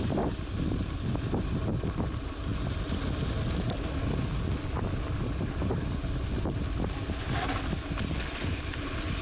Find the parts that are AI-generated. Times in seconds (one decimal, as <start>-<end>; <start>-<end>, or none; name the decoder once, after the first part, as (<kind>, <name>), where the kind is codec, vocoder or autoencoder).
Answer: none